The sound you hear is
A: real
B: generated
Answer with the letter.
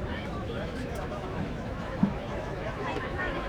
B